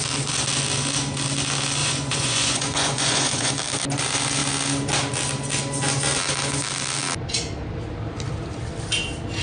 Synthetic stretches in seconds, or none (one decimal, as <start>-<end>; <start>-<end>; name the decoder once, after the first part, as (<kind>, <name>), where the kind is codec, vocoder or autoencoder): 1.8-3.5 (vocoder, Vocos)